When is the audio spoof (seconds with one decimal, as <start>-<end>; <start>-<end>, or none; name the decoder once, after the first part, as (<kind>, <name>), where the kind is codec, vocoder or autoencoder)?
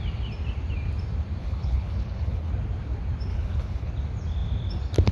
1.4-2.5 (codec, HILCodec); 3.3-3.9